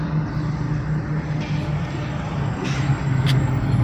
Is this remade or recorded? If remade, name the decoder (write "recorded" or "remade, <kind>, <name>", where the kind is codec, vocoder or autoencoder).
recorded